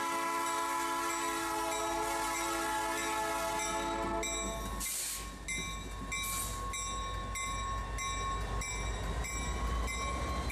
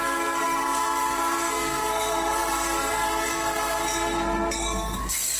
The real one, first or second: first